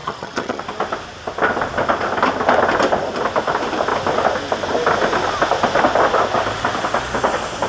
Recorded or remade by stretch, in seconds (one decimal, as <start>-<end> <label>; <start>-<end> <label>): 0.0-0.6 remade; 0.6-7.7 recorded